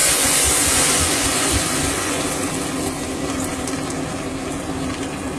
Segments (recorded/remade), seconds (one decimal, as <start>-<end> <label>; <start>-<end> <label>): 0.0-2.2 remade; 2.2-5.4 recorded